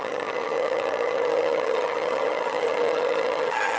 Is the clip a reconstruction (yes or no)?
yes